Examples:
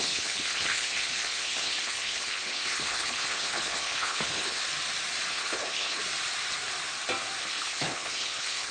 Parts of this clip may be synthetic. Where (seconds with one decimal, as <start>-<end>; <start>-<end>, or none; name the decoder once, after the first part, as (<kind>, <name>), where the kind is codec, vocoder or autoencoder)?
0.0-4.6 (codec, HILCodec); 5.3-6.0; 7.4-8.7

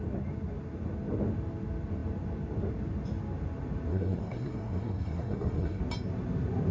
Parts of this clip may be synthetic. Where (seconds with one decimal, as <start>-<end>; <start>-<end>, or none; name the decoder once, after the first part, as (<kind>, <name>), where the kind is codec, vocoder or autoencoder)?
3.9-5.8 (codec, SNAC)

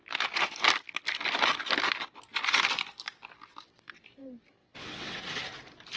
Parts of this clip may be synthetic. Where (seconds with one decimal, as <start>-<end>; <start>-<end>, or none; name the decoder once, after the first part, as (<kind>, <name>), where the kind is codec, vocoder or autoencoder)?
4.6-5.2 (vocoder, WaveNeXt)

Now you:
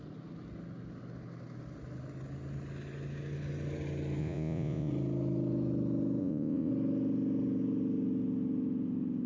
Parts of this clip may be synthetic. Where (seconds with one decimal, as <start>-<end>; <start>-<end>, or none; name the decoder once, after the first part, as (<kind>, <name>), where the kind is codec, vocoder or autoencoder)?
4.2-4.9 (vocoder, Vocos); 6.2-6.7

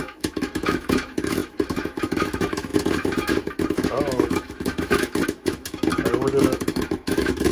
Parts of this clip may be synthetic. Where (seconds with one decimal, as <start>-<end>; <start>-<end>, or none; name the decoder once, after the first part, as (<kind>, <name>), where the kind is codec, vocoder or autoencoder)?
0.0-5.9 (autoencoder, DAC-VAE); 6.4-7.5

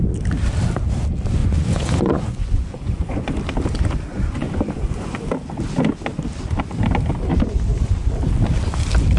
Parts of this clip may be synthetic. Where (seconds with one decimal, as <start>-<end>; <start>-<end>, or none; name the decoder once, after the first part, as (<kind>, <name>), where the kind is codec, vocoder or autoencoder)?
1.4-3.3 (vocoder, Vocos); 4.1-5.2

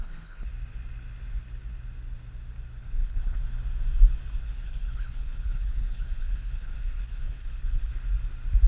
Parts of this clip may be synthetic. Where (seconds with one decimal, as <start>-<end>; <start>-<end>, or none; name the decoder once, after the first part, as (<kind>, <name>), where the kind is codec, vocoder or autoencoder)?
0.0-0.5 (codec, HILCodec); 2.8-3.4; 4.4-7.9